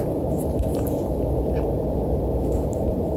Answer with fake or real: fake